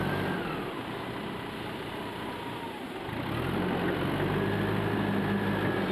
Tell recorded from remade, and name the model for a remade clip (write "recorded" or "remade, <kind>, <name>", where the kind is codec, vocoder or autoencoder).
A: recorded